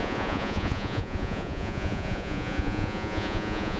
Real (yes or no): no